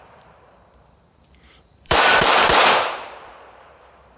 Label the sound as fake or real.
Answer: fake